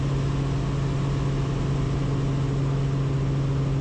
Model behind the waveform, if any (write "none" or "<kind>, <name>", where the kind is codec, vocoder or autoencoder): none